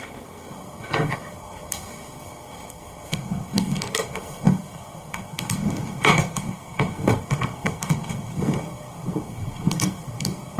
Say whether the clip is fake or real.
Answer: fake